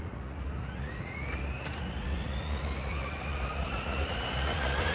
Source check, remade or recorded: remade